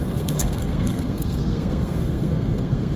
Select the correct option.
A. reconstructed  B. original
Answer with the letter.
A